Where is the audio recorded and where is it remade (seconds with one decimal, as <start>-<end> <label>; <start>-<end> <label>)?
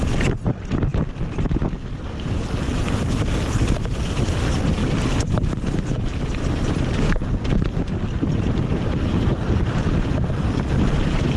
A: 0.0-11.4 recorded